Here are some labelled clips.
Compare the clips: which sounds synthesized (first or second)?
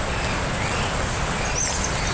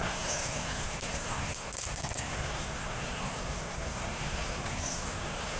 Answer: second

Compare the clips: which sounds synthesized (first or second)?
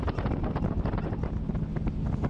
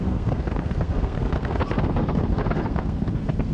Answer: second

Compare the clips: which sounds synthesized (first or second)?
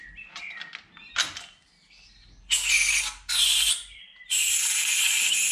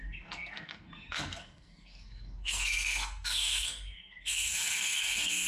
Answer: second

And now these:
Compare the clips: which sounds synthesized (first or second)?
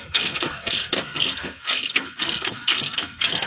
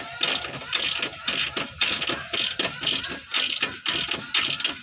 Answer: first